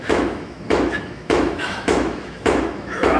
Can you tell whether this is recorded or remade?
remade